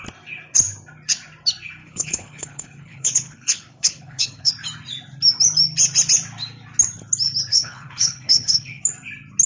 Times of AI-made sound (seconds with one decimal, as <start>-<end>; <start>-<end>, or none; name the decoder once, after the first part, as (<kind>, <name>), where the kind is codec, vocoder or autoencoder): 1.8-4.5 (codec, HILCodec); 7.5-8.8

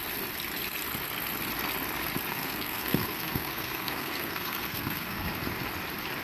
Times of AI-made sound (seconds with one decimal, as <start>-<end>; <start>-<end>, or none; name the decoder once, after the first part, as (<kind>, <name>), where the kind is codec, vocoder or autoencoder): 2.3-5.3 (codec, SNAC)

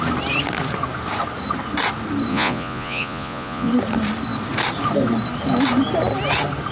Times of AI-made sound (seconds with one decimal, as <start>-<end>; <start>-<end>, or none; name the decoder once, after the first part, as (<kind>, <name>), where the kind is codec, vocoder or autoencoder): 2.3-3.7 (vocoder, Vocos)

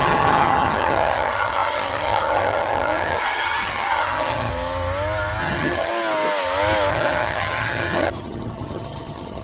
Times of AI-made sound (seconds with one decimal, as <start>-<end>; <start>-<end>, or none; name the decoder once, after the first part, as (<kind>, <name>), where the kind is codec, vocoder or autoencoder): 0.0-4.5 (vocoder, HiFi-GAN); 5.4-5.9; 6.9-9.4